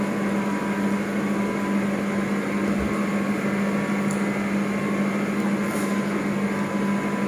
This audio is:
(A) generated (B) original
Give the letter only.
B